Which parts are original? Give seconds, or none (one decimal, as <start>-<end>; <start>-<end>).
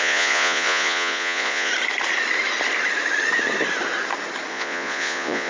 1.7-4.5